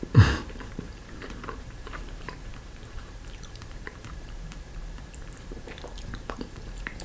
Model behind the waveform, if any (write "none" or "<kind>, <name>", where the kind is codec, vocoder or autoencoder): vocoder, BigVGAN v2